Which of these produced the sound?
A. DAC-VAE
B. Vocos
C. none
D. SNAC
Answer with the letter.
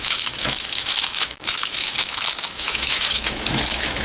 A